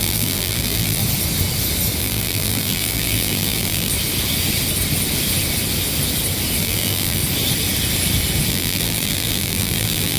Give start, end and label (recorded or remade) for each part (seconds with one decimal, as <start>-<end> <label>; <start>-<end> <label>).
0.0-1.0 remade; 1.0-2.0 recorded; 2.0-3.9 remade; 3.9-6.6 recorded; 6.6-7.2 remade; 7.2-8.5 recorded; 8.5-10.2 remade